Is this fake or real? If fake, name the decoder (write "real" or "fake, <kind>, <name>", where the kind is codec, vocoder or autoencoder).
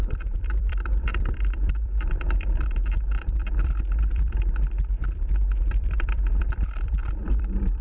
fake, vocoder, BigVGAN v2